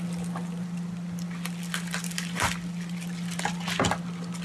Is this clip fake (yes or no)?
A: no